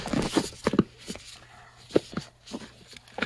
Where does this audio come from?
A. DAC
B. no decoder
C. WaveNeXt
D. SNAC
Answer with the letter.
B